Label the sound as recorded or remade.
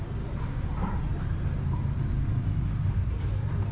recorded